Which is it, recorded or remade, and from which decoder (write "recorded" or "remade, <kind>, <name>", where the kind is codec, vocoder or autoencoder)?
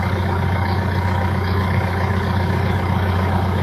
remade, codec, DAC